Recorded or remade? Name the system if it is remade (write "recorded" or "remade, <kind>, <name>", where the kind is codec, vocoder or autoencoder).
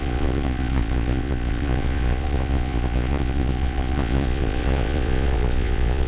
remade, vocoder, Vocos